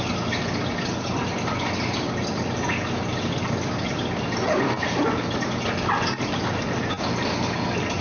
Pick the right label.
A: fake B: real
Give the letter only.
B